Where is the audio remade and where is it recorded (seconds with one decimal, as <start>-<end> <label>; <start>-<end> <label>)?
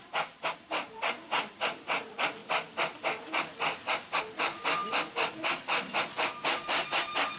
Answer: 0.0-7.4 recorded